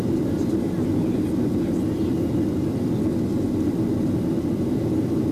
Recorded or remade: recorded